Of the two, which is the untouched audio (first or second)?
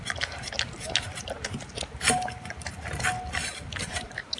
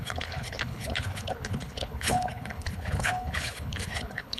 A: first